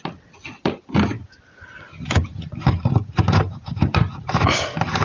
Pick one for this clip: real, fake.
real